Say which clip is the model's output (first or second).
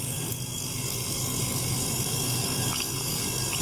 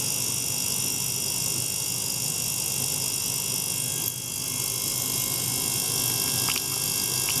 first